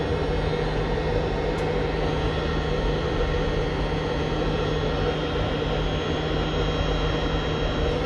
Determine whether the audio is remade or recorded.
recorded